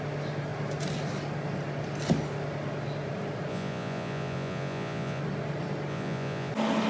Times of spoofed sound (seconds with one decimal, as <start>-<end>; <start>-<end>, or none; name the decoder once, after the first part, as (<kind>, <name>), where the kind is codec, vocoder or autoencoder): 3.5-5.2 (vocoder, Vocos); 5.9-6.5